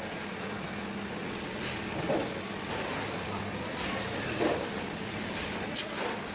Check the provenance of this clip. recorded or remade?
recorded